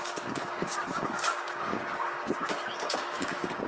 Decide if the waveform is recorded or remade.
remade